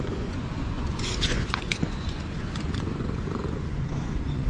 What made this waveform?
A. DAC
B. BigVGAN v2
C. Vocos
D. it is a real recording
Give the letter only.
C